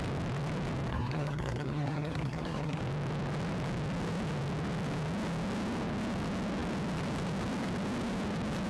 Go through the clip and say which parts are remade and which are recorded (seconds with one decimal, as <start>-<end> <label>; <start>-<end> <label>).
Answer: 0.0-0.9 recorded; 0.9-2.8 remade; 2.8-8.7 recorded